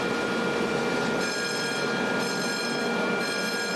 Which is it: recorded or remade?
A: recorded